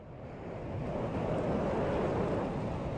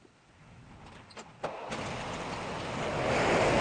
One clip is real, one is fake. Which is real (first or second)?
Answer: second